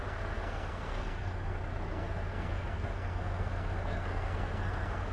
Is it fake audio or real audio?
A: fake